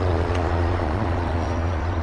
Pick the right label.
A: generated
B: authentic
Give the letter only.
A